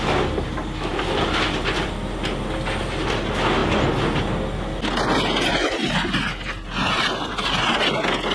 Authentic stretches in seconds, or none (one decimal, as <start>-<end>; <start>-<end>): 0.0-0.9; 1.9-8.3